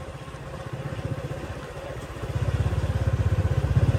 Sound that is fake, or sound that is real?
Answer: real